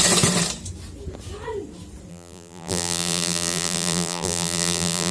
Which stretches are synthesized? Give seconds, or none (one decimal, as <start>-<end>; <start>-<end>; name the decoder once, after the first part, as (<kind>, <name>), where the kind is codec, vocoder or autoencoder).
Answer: 2.1-5.1 (vocoder, BigVGAN v2)